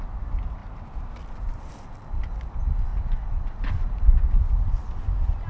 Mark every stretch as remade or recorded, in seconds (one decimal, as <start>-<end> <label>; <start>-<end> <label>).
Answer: 0.0-0.6 recorded; 0.6-1.7 remade; 1.7-5.5 recorded